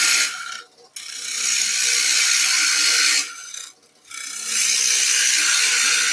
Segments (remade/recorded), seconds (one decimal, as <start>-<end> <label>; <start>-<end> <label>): 0.0-6.1 recorded